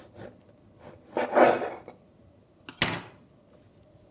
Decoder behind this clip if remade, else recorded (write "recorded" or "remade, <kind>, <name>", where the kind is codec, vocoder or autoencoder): recorded